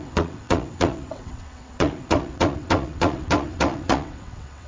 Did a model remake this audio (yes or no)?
yes